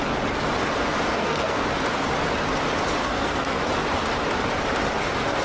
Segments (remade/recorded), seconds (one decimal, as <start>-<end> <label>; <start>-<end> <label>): 0.0-1.1 recorded; 1.1-1.6 remade; 1.6-3.0 recorded; 3.0-3.6 remade; 3.6-5.4 recorded